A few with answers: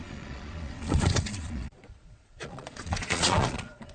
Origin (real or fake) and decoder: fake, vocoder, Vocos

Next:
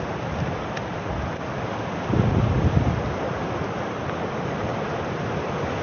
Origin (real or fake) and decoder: real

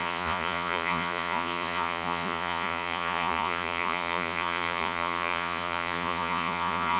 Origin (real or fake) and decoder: fake, vocoder, Vocos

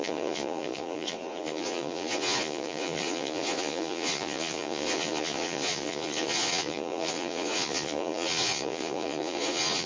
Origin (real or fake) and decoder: fake, vocoder, Vocos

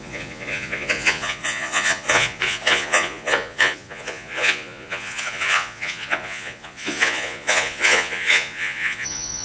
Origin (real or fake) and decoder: fake, vocoder, Vocos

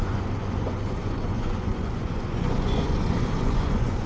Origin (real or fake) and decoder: fake, vocoder, Vocos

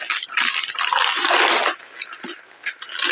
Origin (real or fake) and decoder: real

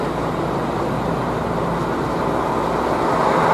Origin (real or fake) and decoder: real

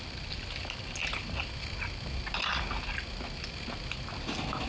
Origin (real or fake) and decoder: real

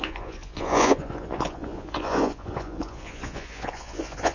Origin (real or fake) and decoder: fake, vocoder, Vocos